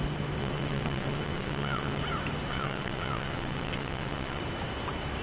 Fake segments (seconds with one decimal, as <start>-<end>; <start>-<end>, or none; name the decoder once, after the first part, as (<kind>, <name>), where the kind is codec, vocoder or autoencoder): 0.4-2.0 (vocoder, WaveNeXt); 2.5-4.4

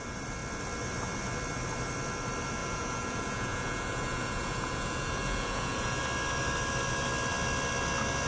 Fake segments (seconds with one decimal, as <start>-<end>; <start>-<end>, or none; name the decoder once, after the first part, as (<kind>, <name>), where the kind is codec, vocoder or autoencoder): 2.6-6.0 (vocoder, Vocos)

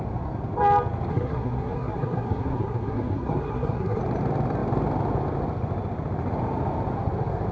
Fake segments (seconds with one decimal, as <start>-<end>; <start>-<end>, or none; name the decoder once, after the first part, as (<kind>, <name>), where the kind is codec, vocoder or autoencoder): 1.1-4.0 (codec, SNAC)

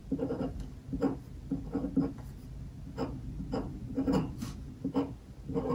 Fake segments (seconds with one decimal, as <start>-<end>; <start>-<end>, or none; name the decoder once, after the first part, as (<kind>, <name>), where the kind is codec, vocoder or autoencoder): none